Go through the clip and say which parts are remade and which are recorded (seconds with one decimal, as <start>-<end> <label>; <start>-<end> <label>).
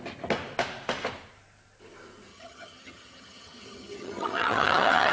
0.0-2.3 recorded; 2.3-5.1 remade